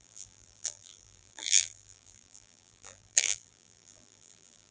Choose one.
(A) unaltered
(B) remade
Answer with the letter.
B